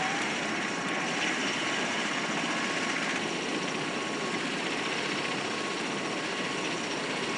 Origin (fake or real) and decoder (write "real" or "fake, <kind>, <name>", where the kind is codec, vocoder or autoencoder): real